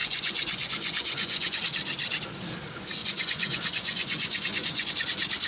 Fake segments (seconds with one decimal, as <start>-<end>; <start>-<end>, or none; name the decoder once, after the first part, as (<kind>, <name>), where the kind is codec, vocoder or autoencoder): 0.0-1.6 (vocoder, Vocos); 3.0-4.9